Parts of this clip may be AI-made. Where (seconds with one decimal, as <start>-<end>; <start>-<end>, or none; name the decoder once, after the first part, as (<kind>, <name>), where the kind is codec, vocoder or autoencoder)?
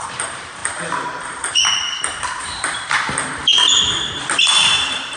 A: 0.0-3.4 (vocoder, BigVGAN v2); 4.4-5.2